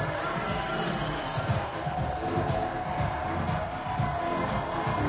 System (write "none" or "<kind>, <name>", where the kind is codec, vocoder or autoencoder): none